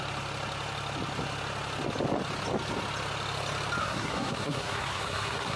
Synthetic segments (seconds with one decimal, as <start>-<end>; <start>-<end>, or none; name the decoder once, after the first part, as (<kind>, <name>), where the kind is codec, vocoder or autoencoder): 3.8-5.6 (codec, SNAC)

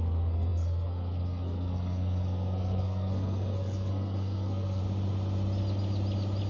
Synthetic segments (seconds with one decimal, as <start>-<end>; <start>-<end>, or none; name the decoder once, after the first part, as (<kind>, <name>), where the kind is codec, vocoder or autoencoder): 0.0-4.8 (codec, SNAC)

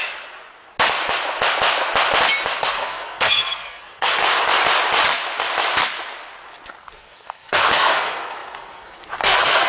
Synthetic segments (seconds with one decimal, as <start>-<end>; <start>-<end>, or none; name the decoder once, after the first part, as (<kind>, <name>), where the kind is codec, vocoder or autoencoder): 2.6-4.2 (codec, SNAC); 6.8-9.7

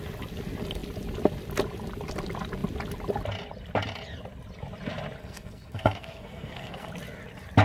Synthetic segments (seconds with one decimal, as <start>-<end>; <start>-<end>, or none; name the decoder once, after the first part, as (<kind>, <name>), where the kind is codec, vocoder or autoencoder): 5.2-6.9 (codec, SNAC)